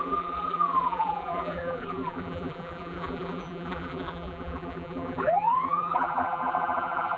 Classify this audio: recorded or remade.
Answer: remade